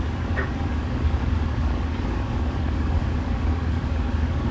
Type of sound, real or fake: fake